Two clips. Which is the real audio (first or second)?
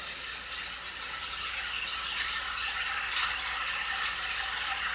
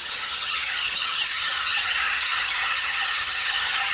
first